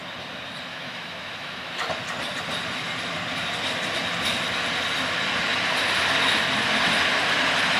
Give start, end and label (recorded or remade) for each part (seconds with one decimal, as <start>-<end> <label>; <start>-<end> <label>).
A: 0.0-0.7 recorded; 0.7-1.7 remade; 1.7-7.8 recorded